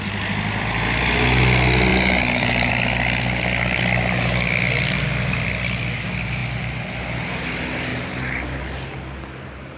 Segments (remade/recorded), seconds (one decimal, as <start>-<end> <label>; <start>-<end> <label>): 0.0-1.9 recorded; 1.9-2.7 remade; 2.7-7.9 recorded; 7.9-8.6 remade; 8.6-9.8 recorded